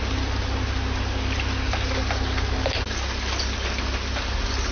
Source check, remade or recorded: recorded